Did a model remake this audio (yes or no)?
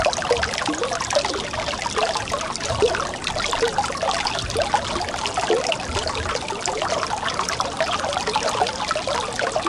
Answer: no